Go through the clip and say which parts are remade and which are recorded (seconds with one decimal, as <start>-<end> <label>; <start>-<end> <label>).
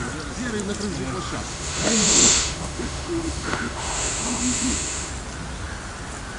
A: 0.0-1.5 recorded; 1.5-5.1 remade; 5.1-6.4 recorded